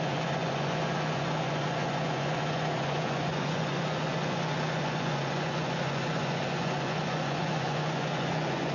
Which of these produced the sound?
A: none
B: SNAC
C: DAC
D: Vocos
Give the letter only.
D